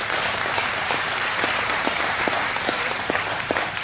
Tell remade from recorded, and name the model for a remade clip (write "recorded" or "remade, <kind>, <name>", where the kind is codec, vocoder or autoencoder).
remade, vocoder, BigVGAN v2